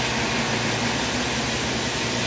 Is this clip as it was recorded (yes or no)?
yes